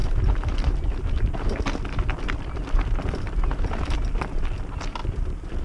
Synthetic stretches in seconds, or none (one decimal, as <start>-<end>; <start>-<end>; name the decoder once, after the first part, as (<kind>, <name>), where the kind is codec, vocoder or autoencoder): none